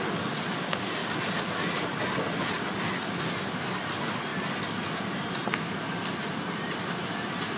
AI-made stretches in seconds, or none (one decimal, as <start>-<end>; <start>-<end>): none